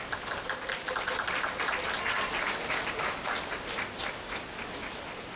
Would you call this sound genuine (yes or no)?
yes